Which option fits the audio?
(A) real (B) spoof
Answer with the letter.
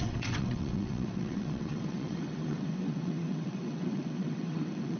B